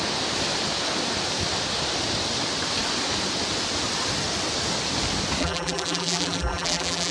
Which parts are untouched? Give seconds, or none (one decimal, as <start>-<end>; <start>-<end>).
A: 0.0-5.4